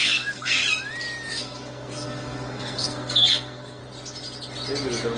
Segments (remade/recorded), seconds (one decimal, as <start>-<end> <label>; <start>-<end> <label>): 0.0-0.6 remade; 0.6-1.3 recorded; 1.3-3.8 remade; 3.8-5.2 recorded